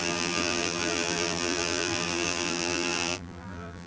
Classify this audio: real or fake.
fake